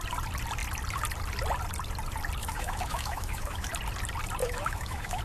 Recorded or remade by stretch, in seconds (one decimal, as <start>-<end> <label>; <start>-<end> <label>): 0.0-2.4 recorded; 2.4-3.7 remade; 3.7-4.4 recorded; 4.4-5.2 remade